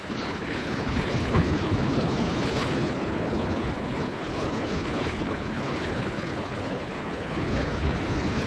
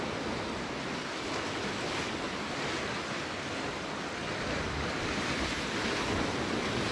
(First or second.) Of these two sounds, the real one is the second